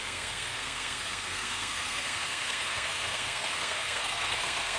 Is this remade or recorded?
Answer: remade